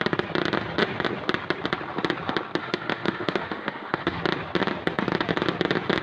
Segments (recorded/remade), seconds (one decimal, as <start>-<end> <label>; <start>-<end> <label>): 0.0-2.6 recorded; 2.6-4.2 remade; 4.2-6.0 recorded